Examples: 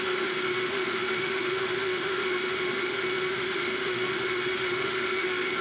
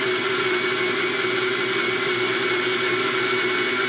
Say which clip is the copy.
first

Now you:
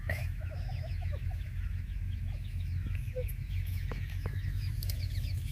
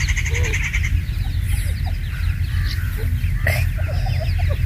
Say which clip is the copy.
first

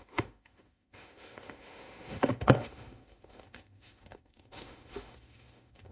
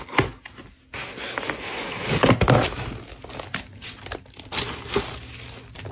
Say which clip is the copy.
first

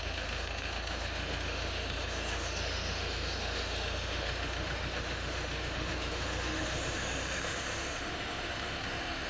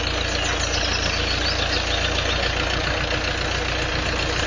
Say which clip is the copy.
first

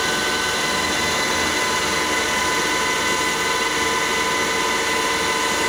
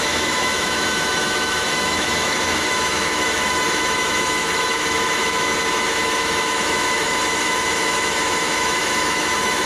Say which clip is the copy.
second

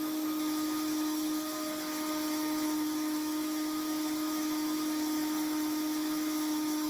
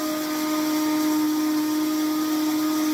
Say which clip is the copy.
first